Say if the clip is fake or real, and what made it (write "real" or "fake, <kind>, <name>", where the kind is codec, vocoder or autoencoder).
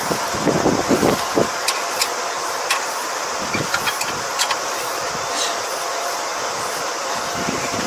fake, vocoder, BigVGAN v2